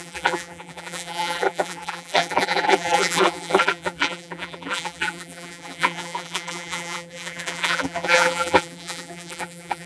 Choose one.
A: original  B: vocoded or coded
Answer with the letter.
B